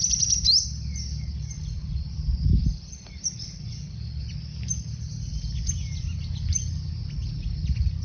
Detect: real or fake real